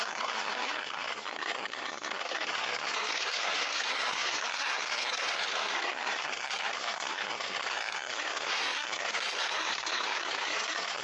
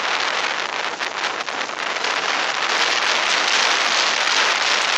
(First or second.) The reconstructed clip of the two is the first